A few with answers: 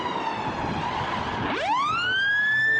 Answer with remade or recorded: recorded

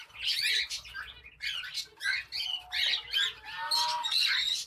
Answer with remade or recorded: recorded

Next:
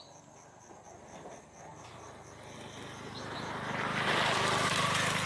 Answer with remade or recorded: recorded